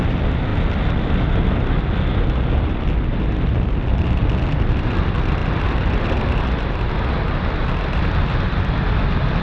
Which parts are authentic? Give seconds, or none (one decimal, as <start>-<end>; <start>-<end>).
0.0-9.4

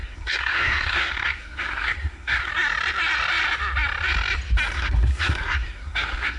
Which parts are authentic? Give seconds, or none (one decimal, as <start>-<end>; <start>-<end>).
2.5-4.7

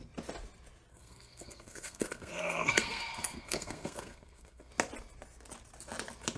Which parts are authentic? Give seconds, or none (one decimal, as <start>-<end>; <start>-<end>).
0.0-0.9; 4.7-6.4

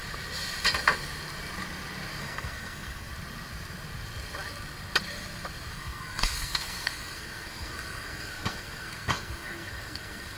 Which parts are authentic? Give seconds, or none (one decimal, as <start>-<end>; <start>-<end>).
0.0-2.2; 3.1-5.7

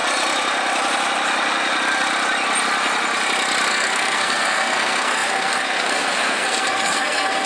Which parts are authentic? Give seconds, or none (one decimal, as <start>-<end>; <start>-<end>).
0.0-3.7

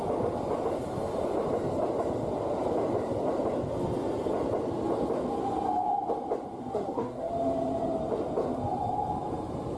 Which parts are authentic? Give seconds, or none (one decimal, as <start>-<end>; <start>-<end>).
0.0-6.6; 7.3-9.8

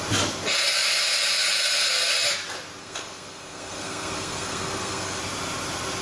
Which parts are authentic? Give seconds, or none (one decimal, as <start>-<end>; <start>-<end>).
0.0-2.8; 5.2-6.0

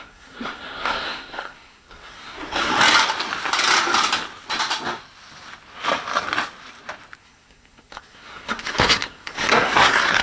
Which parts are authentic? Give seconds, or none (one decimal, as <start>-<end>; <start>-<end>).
2.7-7.2